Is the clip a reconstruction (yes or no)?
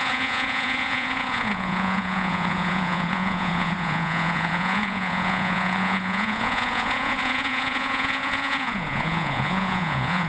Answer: yes